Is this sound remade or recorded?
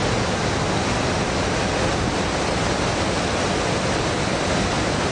recorded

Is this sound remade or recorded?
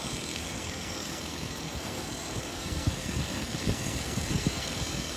remade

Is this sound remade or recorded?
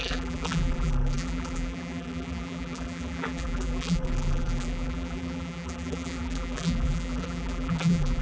remade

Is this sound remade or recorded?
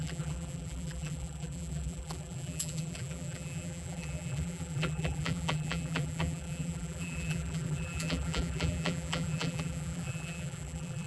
remade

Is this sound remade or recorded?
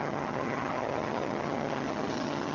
remade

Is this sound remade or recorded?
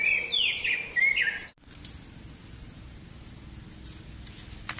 recorded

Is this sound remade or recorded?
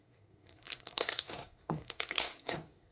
remade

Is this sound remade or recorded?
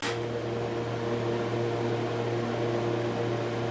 recorded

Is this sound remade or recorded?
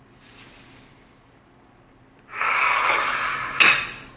recorded